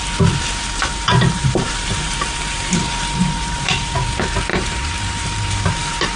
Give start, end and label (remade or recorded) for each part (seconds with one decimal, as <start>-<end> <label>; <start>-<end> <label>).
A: 0.0-0.8 recorded; 0.8-3.8 remade; 3.8-4.5 recorded; 4.5-6.2 remade